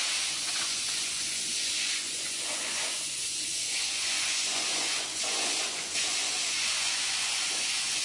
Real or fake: fake